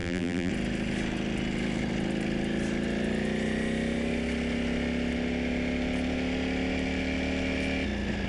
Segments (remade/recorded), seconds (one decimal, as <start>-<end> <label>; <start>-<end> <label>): 0.0-0.5 remade; 0.5-8.3 recorded